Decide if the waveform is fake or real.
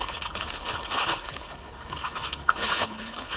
fake